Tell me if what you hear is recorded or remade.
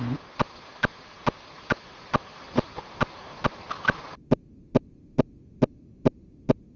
recorded